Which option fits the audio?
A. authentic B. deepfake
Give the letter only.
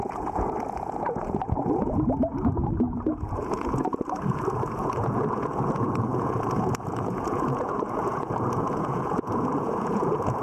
B